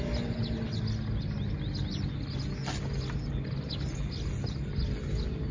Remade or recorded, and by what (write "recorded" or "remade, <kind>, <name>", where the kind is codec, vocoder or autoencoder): recorded